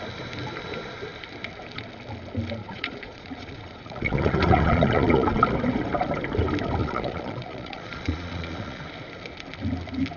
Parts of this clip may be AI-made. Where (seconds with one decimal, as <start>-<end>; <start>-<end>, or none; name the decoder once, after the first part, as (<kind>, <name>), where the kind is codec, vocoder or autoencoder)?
2.6-5.4 (vocoder, Vocos); 6.8-8.8